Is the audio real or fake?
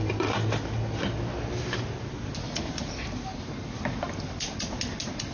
real